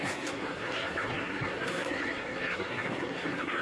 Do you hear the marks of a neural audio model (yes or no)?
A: yes